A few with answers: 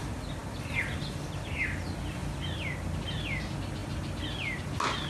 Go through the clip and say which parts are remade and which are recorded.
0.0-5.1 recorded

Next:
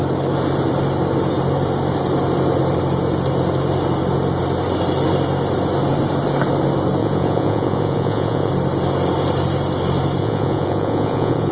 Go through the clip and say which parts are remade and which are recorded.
0.0-7.0 recorded; 7.0-8.5 remade; 8.5-10.2 recorded; 10.2-11.5 remade

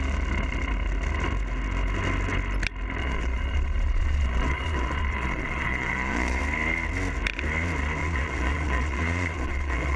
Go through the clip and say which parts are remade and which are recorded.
0.0-3.0 recorded; 3.0-6.4 remade; 6.4-8.0 recorded; 8.0-10.0 remade

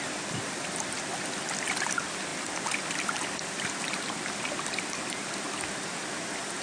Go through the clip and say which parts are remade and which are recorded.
0.0-6.6 recorded

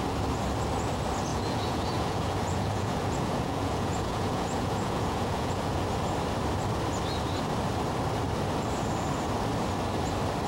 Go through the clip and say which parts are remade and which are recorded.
0.0-1.3 recorded; 1.3-5.8 remade; 5.8-10.5 recorded